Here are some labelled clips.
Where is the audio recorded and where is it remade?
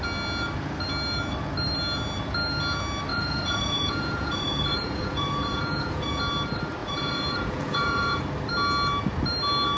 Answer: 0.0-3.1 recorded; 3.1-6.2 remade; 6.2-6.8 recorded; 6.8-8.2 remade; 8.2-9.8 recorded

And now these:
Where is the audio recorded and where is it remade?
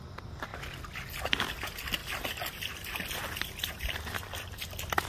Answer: 0.0-5.1 recorded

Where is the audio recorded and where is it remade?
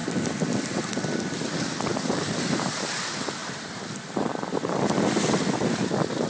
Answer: 0.0-1.9 recorded; 1.9-2.9 remade; 2.9-3.4 recorded; 3.4-5.0 remade; 5.0-6.3 recorded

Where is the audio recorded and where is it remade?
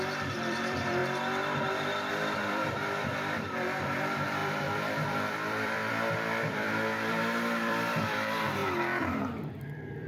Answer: 0.0-1.0 remade; 1.0-2.1 recorded; 2.1-8.6 remade; 8.6-9.2 recorded; 9.2-10.1 remade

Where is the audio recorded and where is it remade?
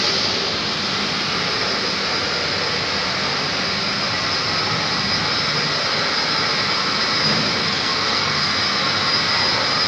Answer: 0.0-7.6 recorded; 7.6-8.5 remade; 8.5-9.9 recorded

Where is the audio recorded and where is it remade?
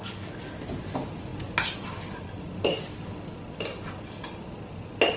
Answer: 0.0-5.2 recorded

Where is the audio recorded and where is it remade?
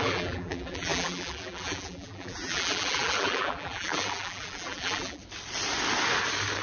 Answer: 0.0-5.2 remade; 5.2-6.6 recorded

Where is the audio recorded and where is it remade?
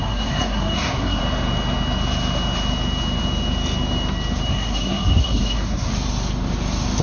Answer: 0.0-1.2 remade; 1.2-4.5 recorded; 4.5-5.9 remade; 5.9-7.0 recorded